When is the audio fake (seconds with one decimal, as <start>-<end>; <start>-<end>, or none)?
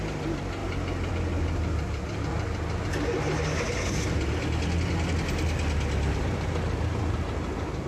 none